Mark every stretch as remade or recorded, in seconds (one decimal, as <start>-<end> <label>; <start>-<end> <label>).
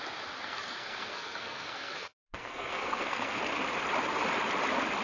0.0-0.4 recorded; 0.4-3.4 remade; 3.4-5.0 recorded